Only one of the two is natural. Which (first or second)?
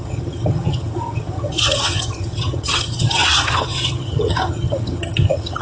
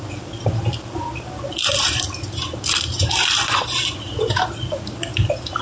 second